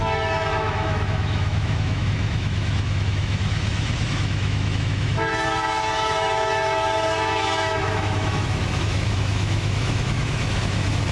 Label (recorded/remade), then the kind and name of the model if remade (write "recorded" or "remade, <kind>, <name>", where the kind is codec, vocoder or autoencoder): remade, autoencoder, DAC-VAE